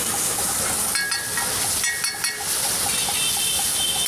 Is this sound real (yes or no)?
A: yes